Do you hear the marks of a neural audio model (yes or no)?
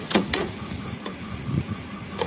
yes